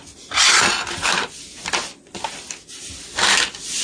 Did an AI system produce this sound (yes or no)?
no